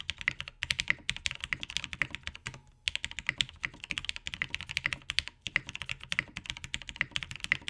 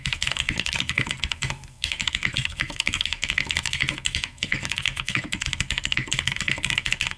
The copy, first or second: second